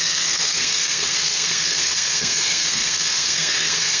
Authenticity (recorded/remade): remade